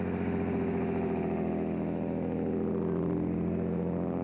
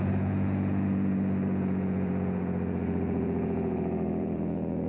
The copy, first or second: second